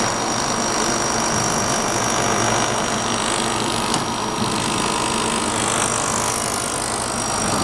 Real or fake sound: real